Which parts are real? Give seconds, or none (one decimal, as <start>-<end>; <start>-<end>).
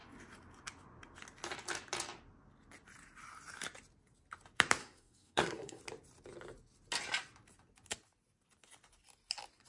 0.0-4.8; 5.8-9.7